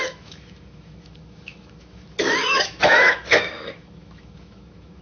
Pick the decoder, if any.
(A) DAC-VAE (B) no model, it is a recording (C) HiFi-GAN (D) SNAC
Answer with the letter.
A